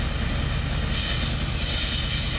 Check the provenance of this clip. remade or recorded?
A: recorded